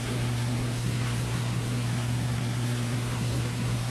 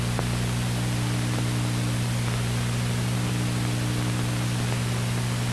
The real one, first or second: second